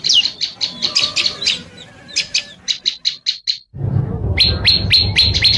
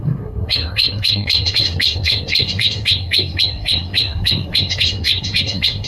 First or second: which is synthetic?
second